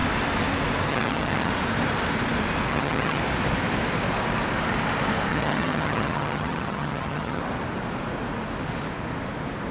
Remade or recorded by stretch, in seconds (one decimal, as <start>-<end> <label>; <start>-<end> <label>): 0.0-0.9 recorded; 0.9-1.5 remade; 1.5-2.7 recorded; 2.7-3.2 remade; 3.2-5.3 recorded; 5.3-7.4 remade; 7.4-9.7 recorded